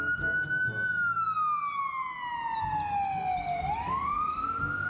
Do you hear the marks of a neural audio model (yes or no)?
no